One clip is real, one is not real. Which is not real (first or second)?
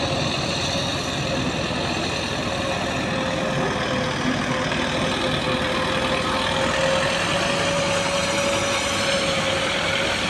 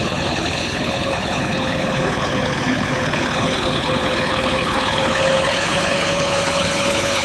second